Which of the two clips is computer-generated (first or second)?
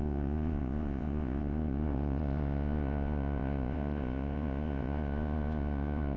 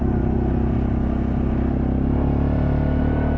first